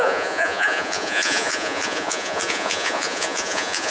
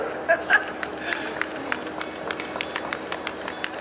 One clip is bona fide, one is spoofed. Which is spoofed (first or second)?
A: first